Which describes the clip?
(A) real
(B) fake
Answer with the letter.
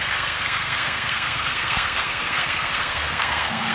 B